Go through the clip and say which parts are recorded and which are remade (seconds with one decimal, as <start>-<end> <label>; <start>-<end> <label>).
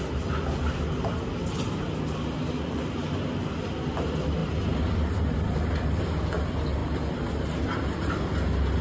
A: 0.0-8.8 recorded